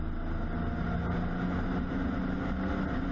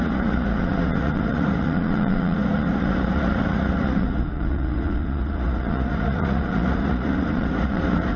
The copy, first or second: second